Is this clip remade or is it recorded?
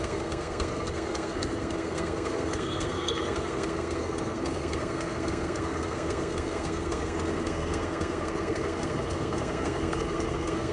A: remade